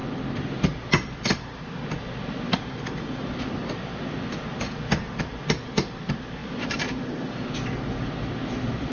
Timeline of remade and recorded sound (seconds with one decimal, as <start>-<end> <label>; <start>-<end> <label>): 0.0-3.2 recorded; 3.2-4.0 remade; 4.0-6.4 recorded; 6.4-7.3 remade; 7.3-8.9 recorded